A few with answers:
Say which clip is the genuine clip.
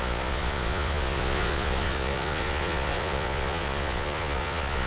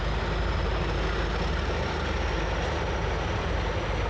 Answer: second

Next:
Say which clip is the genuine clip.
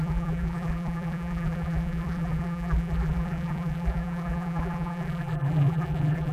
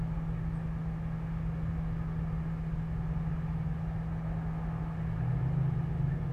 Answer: second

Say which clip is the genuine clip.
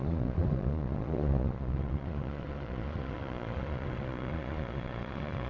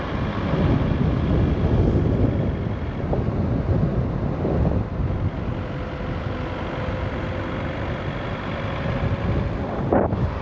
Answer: second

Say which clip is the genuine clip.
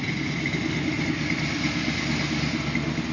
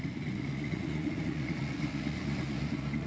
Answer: first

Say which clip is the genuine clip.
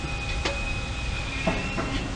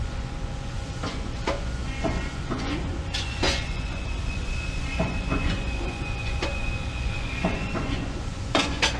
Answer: first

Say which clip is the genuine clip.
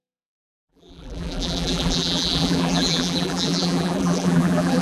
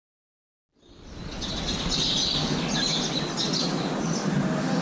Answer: second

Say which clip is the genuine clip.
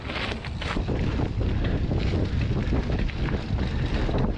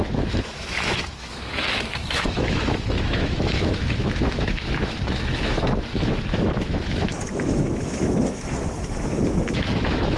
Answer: first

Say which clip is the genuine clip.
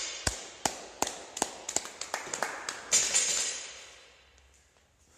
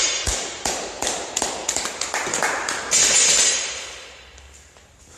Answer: first